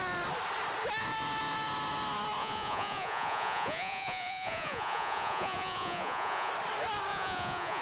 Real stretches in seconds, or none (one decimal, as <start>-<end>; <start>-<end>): 0.0-2.4; 6.5-7.1